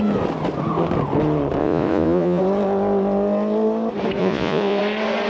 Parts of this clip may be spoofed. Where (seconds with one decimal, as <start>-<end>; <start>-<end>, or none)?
1.6-2.4; 4.2-4.8